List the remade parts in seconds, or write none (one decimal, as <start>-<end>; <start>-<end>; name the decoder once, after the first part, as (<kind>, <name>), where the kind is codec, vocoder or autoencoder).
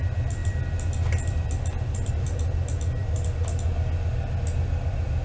none